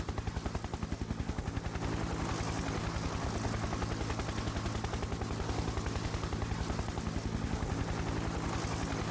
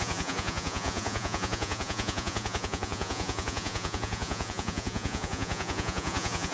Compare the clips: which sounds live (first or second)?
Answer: first